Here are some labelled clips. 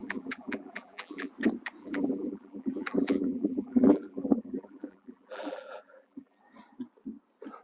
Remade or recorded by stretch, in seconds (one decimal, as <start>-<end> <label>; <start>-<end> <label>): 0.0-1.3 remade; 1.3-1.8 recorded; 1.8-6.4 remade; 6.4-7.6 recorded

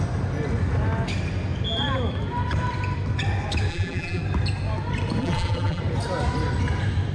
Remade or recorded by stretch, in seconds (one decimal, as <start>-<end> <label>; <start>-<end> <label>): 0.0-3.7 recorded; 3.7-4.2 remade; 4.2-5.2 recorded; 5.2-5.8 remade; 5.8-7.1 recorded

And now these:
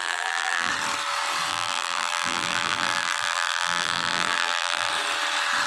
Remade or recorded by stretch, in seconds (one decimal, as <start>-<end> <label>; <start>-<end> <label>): 0.0-0.7 remade; 0.7-1.5 recorded; 1.5-4.9 remade; 4.9-5.7 recorded

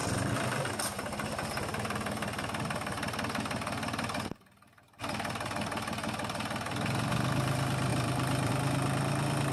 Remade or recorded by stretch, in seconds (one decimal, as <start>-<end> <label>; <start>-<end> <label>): 0.0-0.7 remade; 0.7-7.9 recorded; 7.9-8.5 remade; 8.5-9.5 recorded

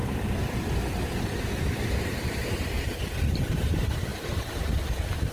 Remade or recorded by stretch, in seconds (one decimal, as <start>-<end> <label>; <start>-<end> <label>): 0.0-0.4 recorded; 0.4-1.8 remade; 1.8-5.3 recorded

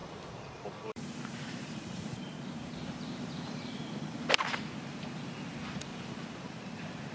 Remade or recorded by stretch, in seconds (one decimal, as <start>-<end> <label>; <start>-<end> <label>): 0.0-4.3 remade; 4.3-5.9 recorded; 5.9-6.6 remade; 6.6-7.1 recorded

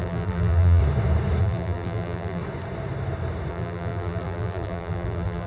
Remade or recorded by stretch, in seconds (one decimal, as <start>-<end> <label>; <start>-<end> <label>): 0.0-0.8 remade; 0.8-1.4 recorded; 1.4-2.4 remade; 2.4-3.5 recorded; 3.5-5.5 remade